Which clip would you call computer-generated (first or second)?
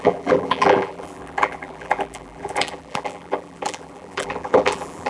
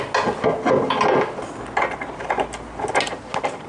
first